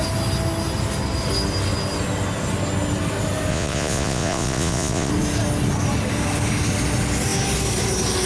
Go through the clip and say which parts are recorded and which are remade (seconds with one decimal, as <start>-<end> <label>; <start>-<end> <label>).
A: 0.0-3.5 recorded; 3.5-5.1 remade; 5.1-8.3 recorded